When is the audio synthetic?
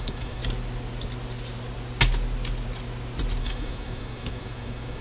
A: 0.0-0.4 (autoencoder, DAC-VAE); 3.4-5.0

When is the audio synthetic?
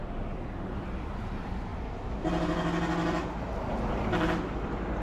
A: 0.0-1.7 (vocoder, BigVGAN v2)